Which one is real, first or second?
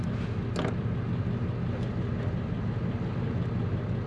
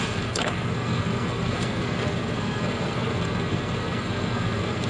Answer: first